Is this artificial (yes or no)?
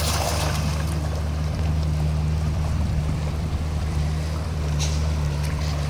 yes